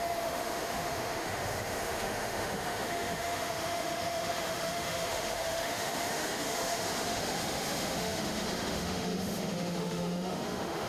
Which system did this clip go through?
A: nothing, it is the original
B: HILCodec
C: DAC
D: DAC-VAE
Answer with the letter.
D